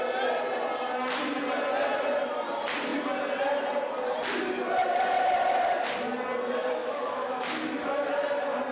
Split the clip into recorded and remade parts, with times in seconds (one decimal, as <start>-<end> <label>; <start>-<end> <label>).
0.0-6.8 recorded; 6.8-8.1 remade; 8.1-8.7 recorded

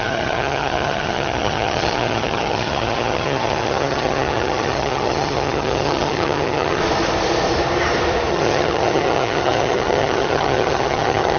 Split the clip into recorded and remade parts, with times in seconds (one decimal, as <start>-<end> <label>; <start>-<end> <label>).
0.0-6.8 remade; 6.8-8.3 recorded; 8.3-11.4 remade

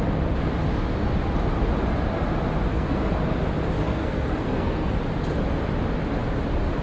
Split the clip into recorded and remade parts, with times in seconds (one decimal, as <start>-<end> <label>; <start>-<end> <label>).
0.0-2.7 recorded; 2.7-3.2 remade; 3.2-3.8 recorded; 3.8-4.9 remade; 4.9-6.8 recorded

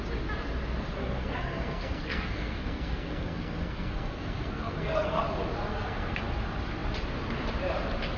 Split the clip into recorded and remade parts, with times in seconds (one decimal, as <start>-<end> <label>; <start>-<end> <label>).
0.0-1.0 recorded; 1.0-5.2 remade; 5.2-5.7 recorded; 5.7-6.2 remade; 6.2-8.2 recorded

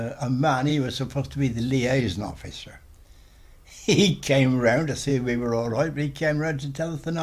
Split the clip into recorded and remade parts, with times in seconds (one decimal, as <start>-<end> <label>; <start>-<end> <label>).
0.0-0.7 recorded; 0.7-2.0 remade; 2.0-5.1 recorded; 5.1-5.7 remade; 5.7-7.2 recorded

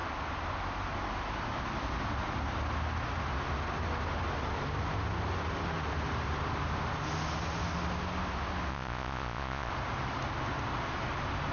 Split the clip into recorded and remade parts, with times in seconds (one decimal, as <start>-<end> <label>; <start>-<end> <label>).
0.0-8.7 recorded; 8.7-9.7 remade; 9.7-11.5 recorded

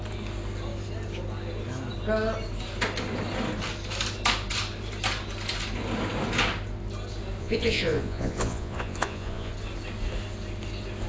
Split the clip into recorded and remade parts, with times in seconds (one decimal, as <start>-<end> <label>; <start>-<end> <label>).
0.0-7.4 recorded; 7.4-9.5 remade; 9.5-11.1 recorded

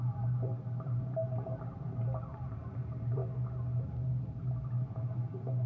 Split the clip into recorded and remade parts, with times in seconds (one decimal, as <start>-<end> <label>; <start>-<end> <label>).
0.0-3.2 remade; 3.2-3.8 recorded; 3.8-5.7 remade